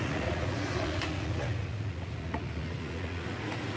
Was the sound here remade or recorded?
remade